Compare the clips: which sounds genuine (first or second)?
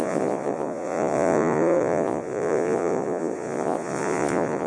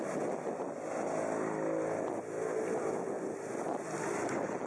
second